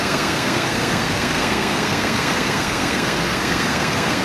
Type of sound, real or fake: fake